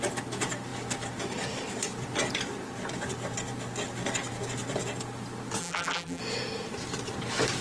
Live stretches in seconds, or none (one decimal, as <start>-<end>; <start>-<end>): 0.0-5.6; 6.2-7.6